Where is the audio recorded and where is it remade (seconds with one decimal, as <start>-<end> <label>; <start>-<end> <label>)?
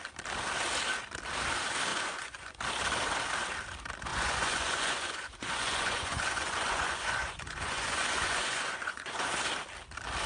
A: 0.0-1.9 recorded; 1.9-2.6 remade; 2.6-4.1 recorded; 4.1-9.3 remade; 9.3-10.3 recorded